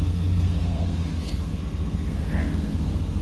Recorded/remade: remade